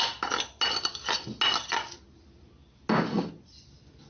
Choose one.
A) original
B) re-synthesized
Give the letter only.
A